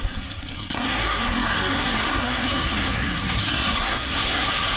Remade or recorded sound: remade